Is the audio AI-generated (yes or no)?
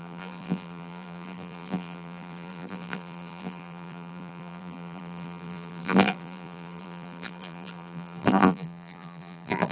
yes